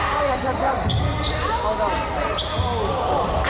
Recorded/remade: recorded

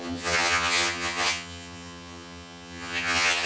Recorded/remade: remade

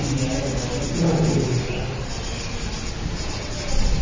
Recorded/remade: recorded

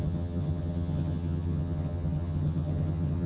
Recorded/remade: remade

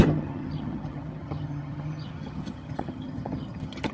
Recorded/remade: remade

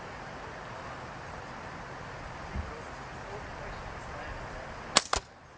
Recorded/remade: recorded